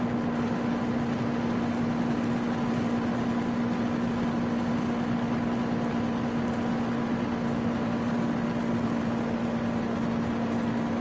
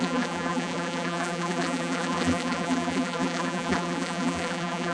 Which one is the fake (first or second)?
second